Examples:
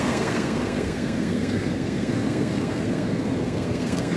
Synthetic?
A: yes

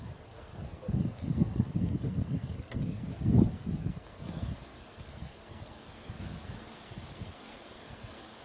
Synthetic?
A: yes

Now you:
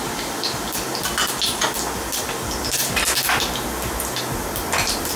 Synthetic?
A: no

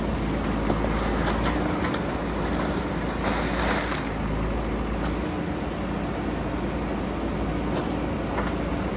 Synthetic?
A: no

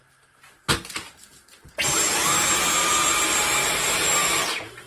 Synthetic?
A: no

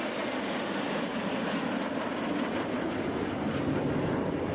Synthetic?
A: no